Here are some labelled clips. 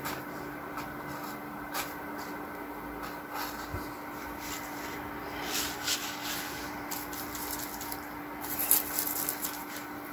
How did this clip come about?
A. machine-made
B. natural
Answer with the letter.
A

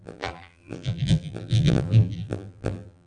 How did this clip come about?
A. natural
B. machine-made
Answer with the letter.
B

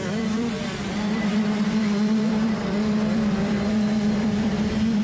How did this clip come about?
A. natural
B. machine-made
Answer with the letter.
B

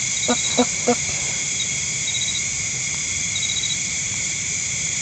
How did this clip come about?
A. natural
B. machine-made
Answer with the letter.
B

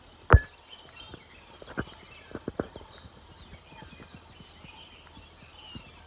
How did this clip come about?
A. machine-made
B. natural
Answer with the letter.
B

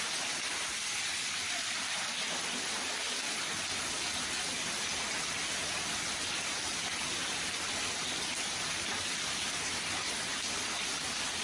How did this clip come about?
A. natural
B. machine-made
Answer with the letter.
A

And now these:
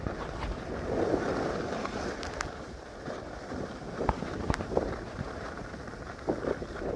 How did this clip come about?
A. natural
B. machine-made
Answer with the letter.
A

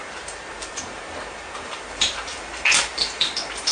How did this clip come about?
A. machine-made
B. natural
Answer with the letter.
A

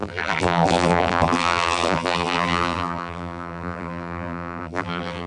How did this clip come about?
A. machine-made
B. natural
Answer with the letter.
A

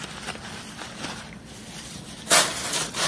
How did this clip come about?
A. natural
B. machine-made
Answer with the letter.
B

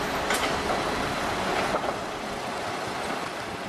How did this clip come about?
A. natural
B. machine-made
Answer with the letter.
A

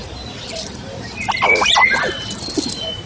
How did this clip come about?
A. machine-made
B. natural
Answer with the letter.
B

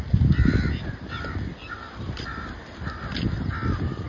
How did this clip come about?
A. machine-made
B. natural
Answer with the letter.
B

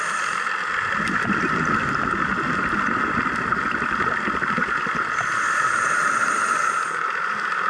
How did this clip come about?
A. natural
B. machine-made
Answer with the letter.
A